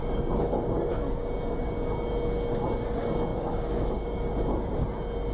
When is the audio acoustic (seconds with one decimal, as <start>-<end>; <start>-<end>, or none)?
0.9-3.3; 4.3-5.3